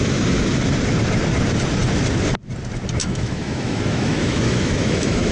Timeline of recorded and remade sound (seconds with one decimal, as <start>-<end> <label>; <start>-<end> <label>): 0.0-3.0 recorded; 3.0-5.3 remade

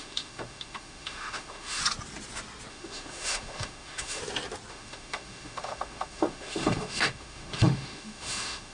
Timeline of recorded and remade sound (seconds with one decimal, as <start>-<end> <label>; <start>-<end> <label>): 0.0-1.8 remade; 1.8-2.7 recorded; 2.7-4.2 remade; 4.2-4.7 recorded; 4.7-8.7 remade

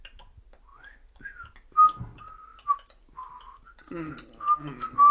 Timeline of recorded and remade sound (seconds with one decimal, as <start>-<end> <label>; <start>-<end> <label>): 0.0-5.1 recorded

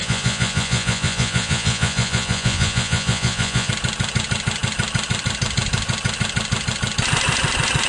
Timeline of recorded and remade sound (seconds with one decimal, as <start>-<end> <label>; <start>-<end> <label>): 0.0-3.7 remade; 3.7-7.9 recorded

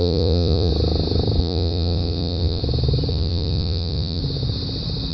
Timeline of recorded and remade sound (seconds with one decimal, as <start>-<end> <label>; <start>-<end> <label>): 0.0-0.7 remade; 0.7-1.4 recorded; 1.4-2.6 remade; 2.6-3.1 recorded; 3.1-4.2 remade; 4.2-5.1 recorded

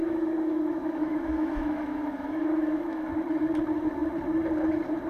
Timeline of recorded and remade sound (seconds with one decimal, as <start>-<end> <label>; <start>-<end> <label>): 0.0-3.1 remade; 3.1-5.1 recorded